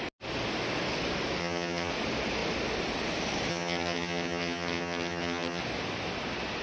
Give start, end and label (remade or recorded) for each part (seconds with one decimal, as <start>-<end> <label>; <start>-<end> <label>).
0.0-1.4 recorded; 1.4-1.9 remade; 1.9-3.5 recorded; 3.5-5.6 remade; 5.6-6.6 recorded